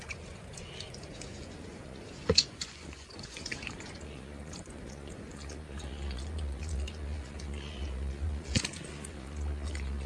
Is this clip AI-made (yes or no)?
yes